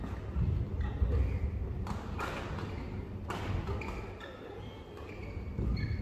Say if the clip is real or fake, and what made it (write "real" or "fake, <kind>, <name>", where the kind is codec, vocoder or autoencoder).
real